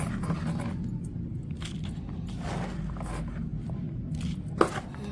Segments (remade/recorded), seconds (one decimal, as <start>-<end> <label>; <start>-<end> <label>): 0.0-5.1 recorded